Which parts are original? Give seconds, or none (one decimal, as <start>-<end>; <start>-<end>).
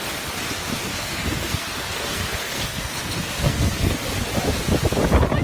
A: 0.0-0.7; 3.9-5.4